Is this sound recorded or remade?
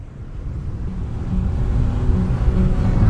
recorded